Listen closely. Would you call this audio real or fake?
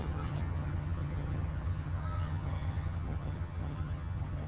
fake